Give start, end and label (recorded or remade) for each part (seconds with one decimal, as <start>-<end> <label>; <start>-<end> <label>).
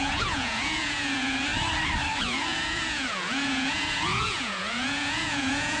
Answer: 0.0-1.5 remade; 1.5-2.2 recorded; 2.2-5.8 remade